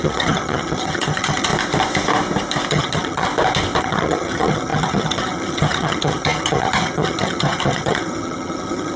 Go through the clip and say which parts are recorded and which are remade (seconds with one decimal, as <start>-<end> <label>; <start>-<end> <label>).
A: 0.0-1.5 remade; 1.5-2.7 recorded; 2.7-3.3 remade; 3.3-3.8 recorded; 3.8-9.0 remade